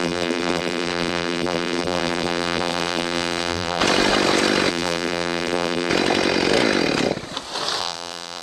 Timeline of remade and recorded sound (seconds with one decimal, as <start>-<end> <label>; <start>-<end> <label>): 0.0-3.8 remade; 3.8-4.7 recorded; 4.7-5.9 remade; 5.9-7.8 recorded; 7.8-8.4 remade